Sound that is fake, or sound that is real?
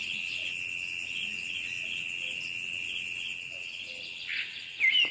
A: real